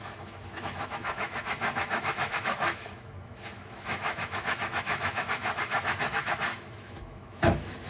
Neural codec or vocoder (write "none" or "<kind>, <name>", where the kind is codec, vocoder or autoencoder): autoencoder, DAC-VAE